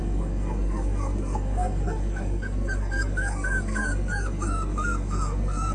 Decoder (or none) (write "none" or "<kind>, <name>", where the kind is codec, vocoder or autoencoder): codec, SNAC